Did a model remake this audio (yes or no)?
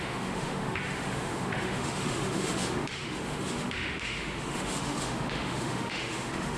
yes